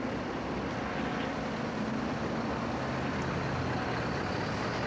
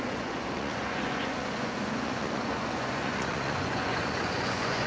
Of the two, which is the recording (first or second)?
first